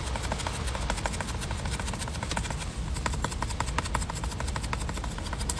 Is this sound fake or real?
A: real